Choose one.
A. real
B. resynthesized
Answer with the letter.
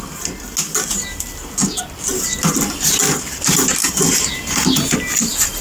A